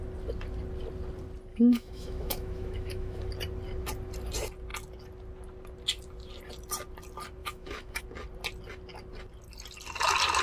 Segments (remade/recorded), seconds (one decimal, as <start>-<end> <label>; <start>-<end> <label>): 0.0-1.5 recorded; 1.5-3.3 remade; 3.3-7.4 recorded; 7.4-8.0 remade; 8.0-10.4 recorded